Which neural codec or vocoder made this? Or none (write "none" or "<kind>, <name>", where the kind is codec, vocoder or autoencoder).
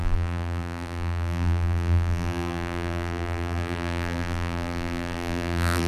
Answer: vocoder, BigVGAN v2